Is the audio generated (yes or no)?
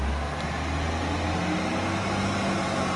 no